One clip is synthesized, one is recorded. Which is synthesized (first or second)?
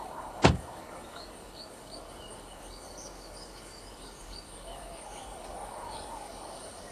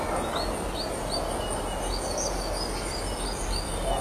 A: first